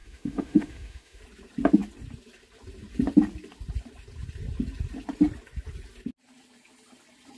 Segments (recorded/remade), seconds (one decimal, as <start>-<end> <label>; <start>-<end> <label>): 0.0-1.2 remade; 1.2-7.4 recorded